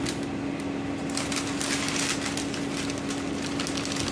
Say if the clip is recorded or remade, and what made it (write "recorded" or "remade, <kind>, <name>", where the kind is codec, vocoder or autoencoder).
recorded